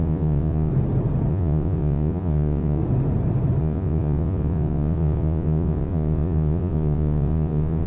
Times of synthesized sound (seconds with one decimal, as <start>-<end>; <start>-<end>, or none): 0.0-0.7; 1.3-2.8; 3.6-7.9

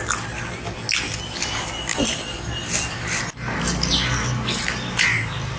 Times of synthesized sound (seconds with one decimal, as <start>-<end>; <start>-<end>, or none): none